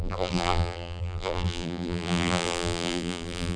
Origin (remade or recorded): remade